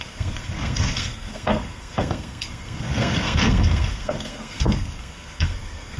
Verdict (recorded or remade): remade